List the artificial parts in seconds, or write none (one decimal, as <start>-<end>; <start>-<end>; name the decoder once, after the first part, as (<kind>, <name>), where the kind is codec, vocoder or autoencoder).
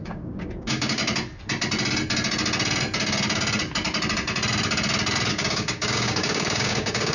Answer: 0.0-1.0 (codec, DAC); 5.3-7.1